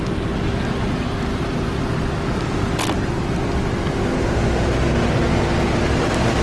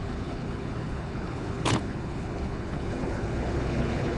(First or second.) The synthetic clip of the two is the second